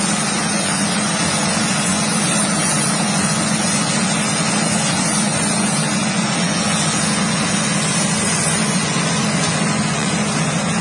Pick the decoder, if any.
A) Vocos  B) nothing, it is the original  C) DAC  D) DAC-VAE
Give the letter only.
A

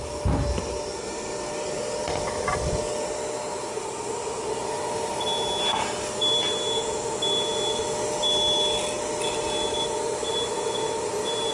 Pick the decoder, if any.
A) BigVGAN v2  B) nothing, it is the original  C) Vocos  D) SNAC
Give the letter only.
B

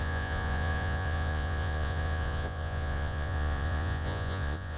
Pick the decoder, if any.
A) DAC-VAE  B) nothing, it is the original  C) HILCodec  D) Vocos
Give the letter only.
D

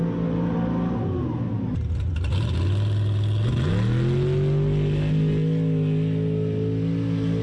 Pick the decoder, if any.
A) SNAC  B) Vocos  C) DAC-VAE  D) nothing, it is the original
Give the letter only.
D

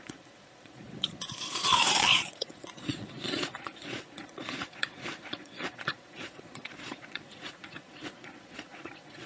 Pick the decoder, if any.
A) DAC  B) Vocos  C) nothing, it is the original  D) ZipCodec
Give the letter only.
B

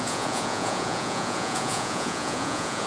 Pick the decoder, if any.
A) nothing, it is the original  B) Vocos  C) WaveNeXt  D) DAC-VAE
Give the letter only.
B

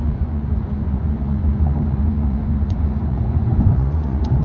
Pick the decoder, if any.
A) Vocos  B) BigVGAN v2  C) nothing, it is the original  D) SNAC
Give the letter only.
A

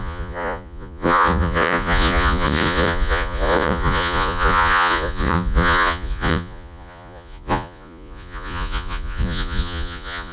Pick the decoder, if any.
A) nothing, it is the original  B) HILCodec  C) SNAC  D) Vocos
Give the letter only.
D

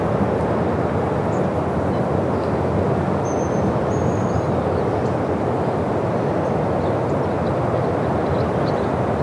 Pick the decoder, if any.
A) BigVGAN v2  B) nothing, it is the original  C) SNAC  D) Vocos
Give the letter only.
B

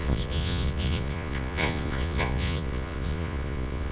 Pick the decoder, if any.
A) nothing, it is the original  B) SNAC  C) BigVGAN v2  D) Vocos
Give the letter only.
D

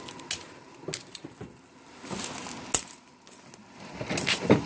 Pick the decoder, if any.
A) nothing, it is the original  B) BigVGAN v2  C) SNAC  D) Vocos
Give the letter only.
A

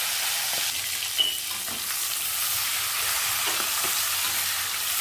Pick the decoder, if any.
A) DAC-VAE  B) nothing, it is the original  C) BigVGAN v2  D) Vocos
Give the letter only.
B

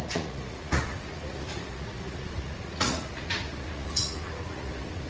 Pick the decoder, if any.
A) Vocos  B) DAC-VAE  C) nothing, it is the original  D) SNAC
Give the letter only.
A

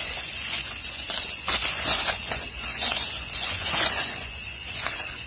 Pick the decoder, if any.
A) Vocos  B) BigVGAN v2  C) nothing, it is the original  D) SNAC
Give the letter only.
A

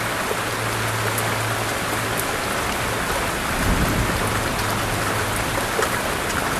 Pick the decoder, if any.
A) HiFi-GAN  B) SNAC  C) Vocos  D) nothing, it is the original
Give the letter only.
D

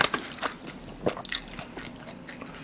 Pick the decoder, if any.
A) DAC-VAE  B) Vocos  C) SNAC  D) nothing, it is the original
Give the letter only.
D